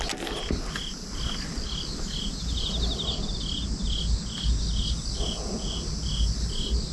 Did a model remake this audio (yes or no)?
no